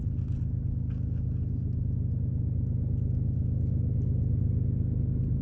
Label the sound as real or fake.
real